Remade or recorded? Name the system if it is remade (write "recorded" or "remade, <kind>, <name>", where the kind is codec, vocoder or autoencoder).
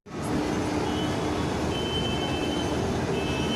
recorded